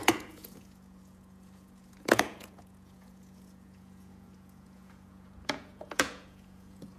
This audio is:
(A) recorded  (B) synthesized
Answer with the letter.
B